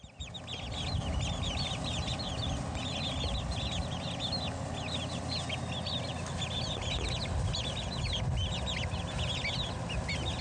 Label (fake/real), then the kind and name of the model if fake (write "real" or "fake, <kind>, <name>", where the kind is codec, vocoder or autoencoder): real